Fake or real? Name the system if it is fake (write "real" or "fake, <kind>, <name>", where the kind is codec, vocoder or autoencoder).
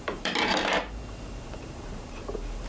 fake, vocoder, BigVGAN v2